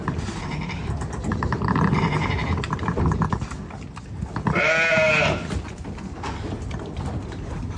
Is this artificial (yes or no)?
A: no